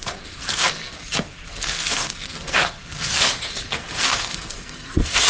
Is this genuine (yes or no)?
no